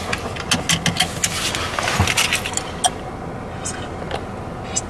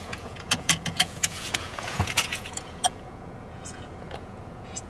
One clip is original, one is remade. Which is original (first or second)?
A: first